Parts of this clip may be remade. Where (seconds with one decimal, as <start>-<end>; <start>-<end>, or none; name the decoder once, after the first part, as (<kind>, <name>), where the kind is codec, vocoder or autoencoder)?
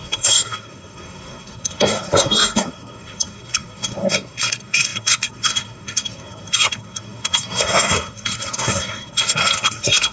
0.0-10.1 (codec, SNAC)